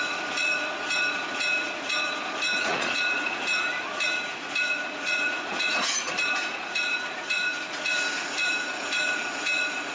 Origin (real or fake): fake